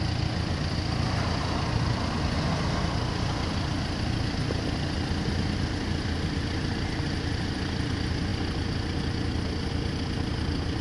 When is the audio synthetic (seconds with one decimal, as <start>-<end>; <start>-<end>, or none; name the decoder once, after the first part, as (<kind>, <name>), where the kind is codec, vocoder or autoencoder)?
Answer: none